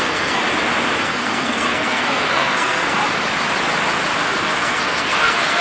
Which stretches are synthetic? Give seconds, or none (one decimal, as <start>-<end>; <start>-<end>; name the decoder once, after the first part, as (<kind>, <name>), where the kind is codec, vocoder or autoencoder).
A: 0.0-0.4 (codec, SNAC); 1.0-3.0; 4.4-5.6